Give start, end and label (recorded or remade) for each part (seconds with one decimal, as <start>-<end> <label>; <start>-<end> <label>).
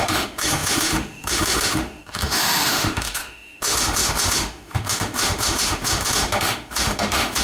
0.0-7.4 remade